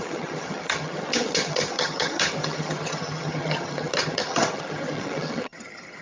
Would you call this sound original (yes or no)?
no